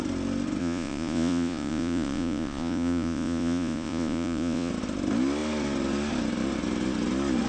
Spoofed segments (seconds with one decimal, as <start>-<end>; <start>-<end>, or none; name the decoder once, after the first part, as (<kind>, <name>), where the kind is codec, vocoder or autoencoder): 0.6-4.7 (vocoder, Vocos)